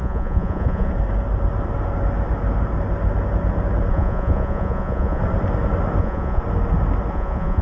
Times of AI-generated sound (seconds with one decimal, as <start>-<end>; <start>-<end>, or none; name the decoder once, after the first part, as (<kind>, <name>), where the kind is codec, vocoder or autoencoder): 0.0-0.9 (vocoder, Vocos); 3.9-5.2; 6.0-6.4; 7.1-7.6